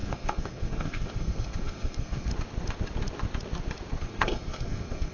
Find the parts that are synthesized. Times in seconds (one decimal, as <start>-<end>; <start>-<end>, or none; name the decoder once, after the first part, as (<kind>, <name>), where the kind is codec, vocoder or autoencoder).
0.0-2.3 (codec, SNAC); 4.0-5.1